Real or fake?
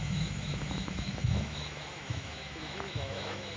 fake